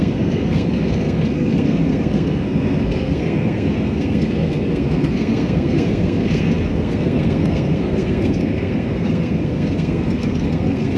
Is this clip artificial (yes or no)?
yes